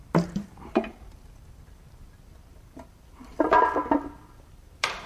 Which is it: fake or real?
fake